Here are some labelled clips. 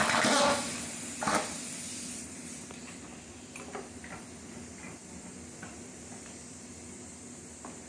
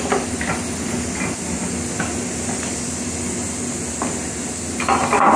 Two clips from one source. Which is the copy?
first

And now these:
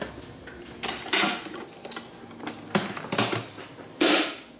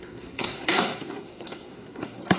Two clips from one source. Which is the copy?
second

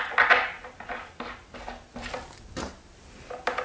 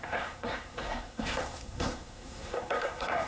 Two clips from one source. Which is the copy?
second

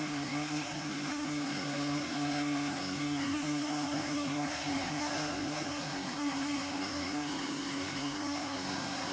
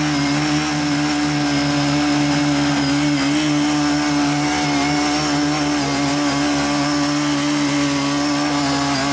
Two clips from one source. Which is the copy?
first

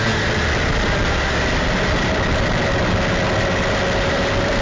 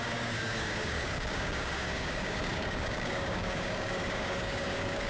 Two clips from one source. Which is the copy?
second